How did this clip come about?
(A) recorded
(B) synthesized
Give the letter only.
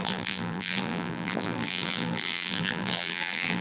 B